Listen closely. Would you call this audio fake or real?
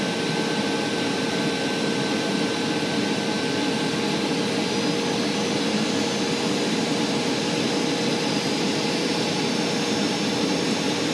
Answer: real